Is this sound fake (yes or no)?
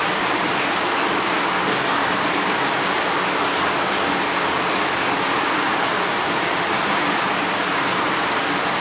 no